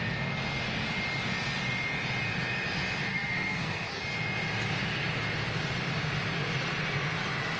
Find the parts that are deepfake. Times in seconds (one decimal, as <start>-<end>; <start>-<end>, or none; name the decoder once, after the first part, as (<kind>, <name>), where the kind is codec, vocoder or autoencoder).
3.1-4.0 (codec, SNAC)